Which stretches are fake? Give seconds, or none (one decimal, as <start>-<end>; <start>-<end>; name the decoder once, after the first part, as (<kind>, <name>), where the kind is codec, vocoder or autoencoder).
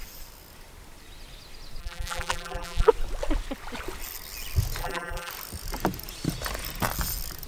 1.8-2.9 (vocoder, BigVGAN v2); 4.8-5.3